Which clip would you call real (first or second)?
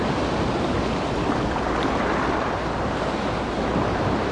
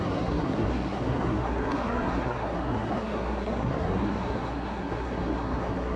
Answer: first